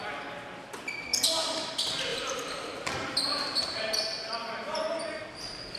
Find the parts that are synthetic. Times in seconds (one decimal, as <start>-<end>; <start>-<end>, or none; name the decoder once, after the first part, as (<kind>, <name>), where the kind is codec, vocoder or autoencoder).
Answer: 1.1-1.7 (vocoder, BigVGAN v2); 2.1-4.0